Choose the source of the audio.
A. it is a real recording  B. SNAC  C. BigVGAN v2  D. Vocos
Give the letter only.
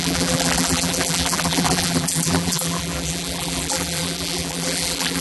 C